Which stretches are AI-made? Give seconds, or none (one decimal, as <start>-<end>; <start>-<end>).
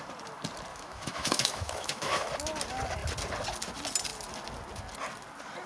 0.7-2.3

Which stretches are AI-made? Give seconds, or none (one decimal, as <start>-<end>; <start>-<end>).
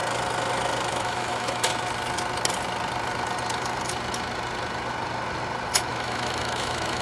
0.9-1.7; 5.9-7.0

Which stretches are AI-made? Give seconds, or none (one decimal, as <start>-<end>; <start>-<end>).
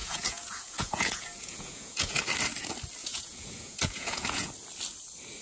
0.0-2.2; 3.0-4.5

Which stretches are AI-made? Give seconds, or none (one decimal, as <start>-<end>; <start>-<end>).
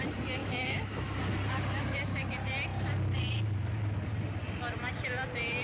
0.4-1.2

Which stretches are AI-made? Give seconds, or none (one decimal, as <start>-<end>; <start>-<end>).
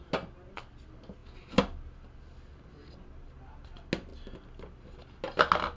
none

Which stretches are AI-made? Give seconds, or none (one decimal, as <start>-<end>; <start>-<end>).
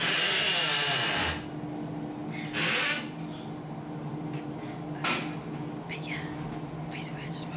none